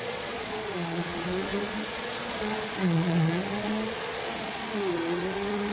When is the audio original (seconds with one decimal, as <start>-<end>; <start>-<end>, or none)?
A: none